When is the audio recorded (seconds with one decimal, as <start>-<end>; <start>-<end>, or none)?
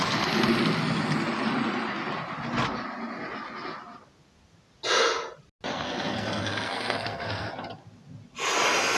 0.0-5.7; 7.5-9.0